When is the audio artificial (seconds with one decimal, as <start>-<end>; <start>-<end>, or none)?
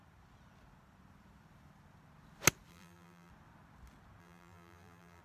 2.7-3.3; 4.2-5.2